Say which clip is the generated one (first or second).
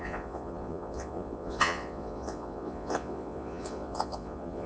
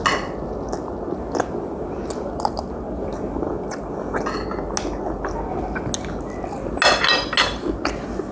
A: first